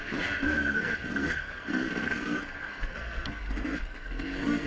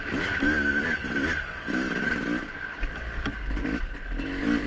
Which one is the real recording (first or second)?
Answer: second